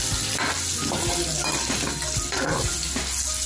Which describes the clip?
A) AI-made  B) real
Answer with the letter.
B